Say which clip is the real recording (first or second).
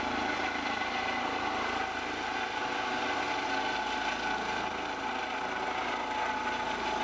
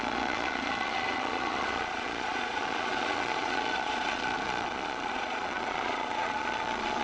first